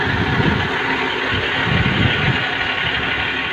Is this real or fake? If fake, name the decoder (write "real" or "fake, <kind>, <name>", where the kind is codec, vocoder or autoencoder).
real